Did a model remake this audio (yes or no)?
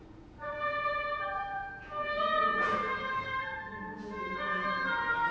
yes